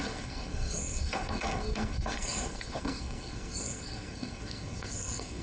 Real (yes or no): no